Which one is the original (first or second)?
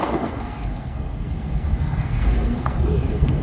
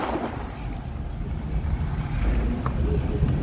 second